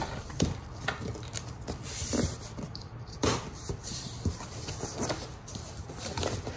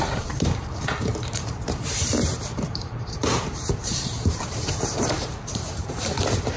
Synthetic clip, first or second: second